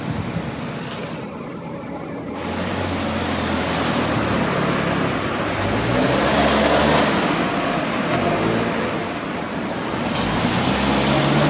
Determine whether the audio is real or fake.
real